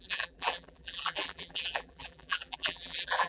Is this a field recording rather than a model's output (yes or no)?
no